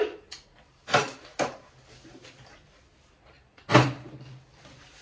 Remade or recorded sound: recorded